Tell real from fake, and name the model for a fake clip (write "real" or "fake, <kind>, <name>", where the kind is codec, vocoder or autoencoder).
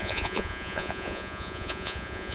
fake, vocoder, Vocos